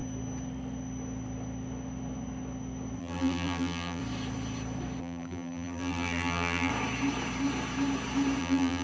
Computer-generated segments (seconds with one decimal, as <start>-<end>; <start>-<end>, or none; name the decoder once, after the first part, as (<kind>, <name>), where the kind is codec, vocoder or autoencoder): 3.0-4.0 (vocoder, BigVGAN v2); 5.0-6.7; 8.4-8.8